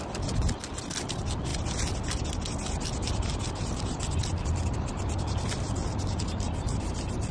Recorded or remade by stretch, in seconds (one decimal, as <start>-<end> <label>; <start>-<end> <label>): 0.0-7.3 recorded